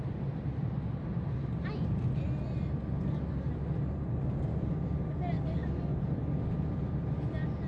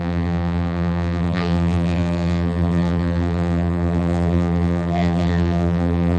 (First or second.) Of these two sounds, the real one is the first